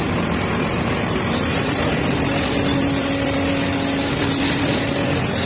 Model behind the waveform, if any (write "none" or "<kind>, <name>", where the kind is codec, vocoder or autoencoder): vocoder, BigVGAN v2